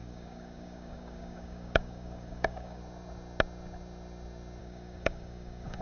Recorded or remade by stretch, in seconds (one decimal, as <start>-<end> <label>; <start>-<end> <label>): 0.0-2.8 remade; 2.8-4.6 recorded; 4.6-5.8 remade